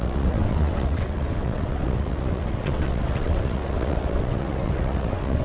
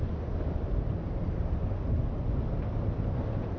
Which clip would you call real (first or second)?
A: second